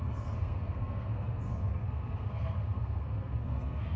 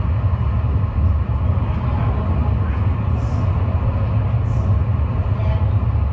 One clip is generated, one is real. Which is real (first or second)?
second